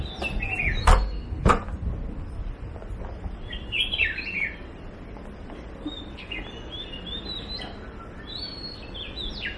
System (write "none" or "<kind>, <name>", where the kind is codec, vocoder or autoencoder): none